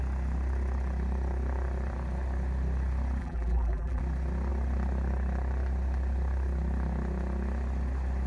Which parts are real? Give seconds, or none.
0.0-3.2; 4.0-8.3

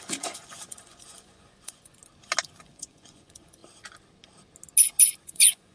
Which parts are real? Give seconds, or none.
2.0-2.6; 3.6-5.2

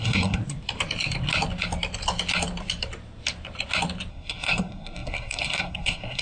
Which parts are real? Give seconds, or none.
0.4-4.1